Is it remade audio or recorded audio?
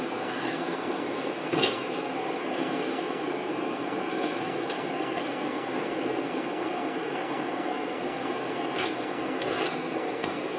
remade